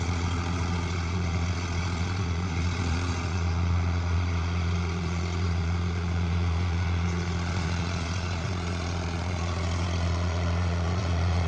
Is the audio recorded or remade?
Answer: remade